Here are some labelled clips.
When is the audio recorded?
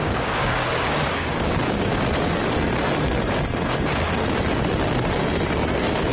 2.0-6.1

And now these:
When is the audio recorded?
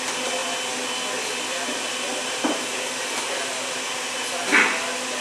0.0-5.2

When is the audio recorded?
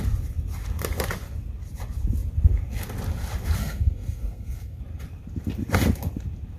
0.0-3.6; 4.8-6.6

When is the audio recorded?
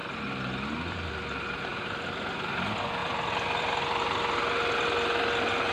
0.0-3.0; 4.0-5.7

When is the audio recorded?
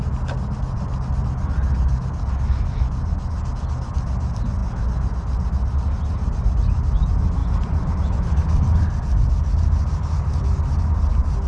0.0-11.5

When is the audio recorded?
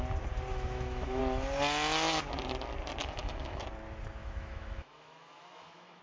0.0-0.5; 1.2-3.0; 3.6-4.2